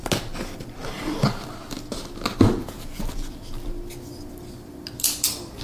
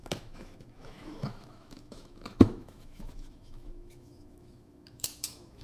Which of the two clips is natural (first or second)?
first